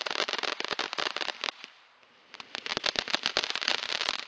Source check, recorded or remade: recorded